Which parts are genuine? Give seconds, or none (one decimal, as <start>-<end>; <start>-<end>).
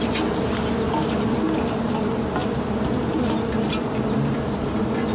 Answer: 0.0-5.1